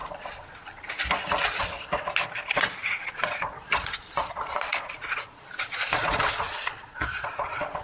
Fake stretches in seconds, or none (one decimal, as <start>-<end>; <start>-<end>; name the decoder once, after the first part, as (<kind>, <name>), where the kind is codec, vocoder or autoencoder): 0.0-0.9 (vocoder, Vocos); 2.8-7.8